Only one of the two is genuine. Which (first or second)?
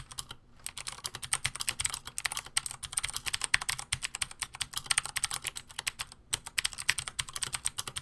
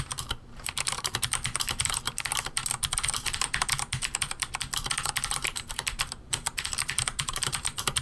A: first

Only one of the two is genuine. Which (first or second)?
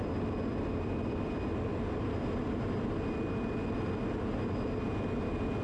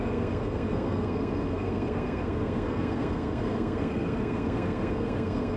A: first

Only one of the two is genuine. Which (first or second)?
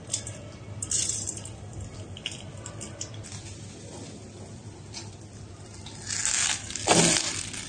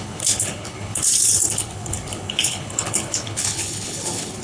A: first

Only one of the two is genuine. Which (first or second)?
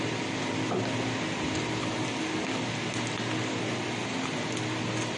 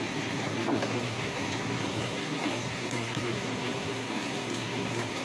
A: first